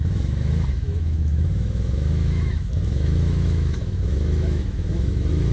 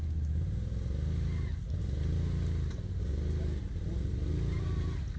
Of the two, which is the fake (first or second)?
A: first